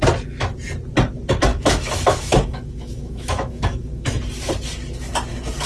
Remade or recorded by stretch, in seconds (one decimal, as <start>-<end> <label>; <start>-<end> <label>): 0.0-1.5 recorded; 1.5-4.2 remade; 4.2-5.7 recorded